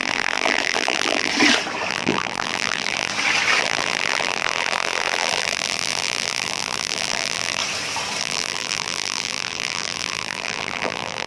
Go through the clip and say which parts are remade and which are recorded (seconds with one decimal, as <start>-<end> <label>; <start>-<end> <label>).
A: 0.0-1.3 remade; 1.3-1.9 recorded; 1.9-3.1 remade; 3.1-3.6 recorded; 3.6-7.6 remade; 7.6-8.2 recorded; 8.2-11.3 remade